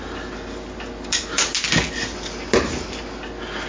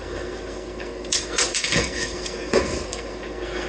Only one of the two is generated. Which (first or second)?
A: second